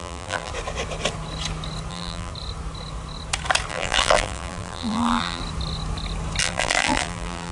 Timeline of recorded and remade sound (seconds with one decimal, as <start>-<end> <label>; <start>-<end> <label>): 0.0-0.5 remade; 0.5-1.9 recorded; 1.9-2.3 remade; 2.3-3.7 recorded; 3.7-5.4 remade; 5.4-6.4 recorded; 6.4-7.5 remade